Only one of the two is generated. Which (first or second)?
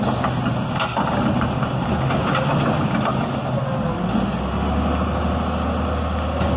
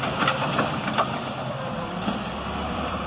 second